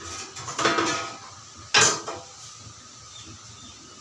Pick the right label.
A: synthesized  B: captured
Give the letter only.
B